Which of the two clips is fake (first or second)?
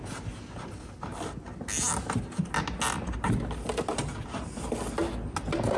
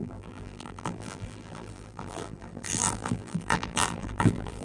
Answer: second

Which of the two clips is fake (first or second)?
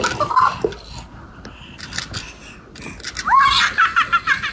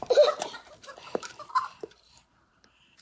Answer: second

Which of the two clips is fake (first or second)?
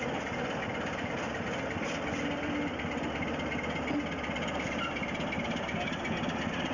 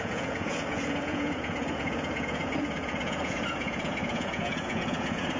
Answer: second